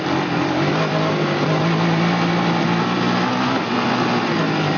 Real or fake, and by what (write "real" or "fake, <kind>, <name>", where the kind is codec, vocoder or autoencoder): fake, vocoder, BigVGAN v2